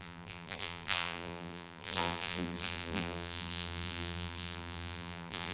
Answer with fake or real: fake